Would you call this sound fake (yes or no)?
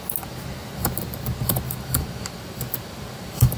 no